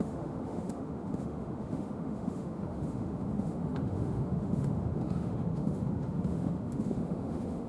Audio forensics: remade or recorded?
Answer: remade